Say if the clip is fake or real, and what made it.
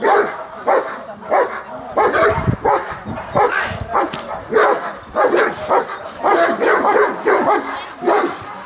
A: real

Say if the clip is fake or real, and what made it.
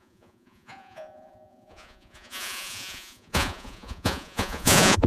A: fake, vocoder, Vocos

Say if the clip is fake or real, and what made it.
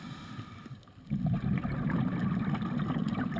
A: real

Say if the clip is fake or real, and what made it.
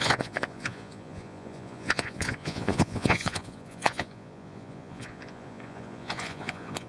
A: fake, vocoder, Vocos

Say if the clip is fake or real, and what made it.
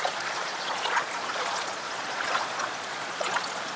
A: fake, vocoder, Vocos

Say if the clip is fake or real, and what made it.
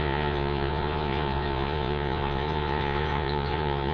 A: fake, vocoder, Vocos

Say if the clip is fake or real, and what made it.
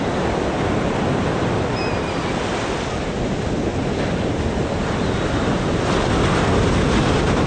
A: real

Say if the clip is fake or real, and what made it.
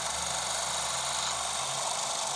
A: real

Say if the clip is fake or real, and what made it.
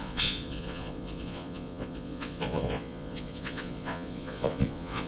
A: fake, vocoder, Vocos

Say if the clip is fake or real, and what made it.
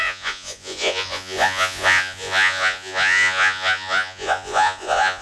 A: fake, vocoder, Vocos